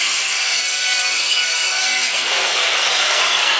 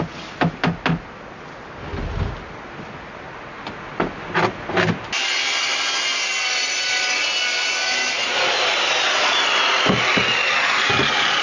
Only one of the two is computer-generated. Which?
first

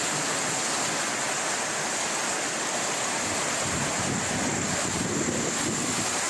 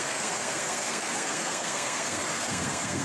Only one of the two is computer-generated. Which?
second